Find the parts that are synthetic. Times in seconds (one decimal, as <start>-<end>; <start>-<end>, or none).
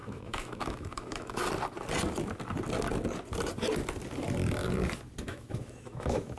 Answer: 0.0-1.4; 5.2-6.4